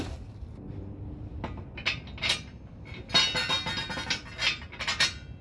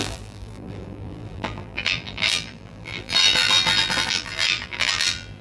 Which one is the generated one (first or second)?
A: second